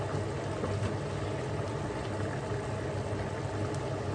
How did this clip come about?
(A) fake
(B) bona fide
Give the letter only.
B